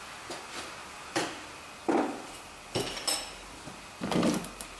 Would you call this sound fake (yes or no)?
no